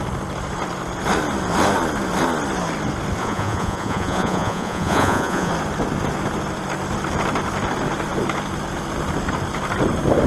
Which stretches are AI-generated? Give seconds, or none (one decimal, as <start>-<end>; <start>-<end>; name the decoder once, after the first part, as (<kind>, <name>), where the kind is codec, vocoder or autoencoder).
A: 3.2-5.5 (vocoder, Vocos)